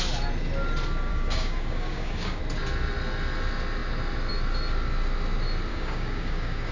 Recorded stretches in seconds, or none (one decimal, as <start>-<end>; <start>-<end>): 0.0-1.1; 2.4-5.7